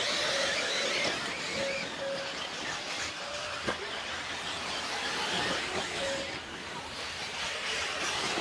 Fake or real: real